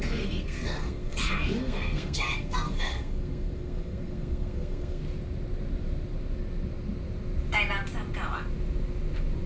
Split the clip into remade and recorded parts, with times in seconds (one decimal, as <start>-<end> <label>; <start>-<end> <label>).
0.0-5.0 remade; 5.0-9.5 recorded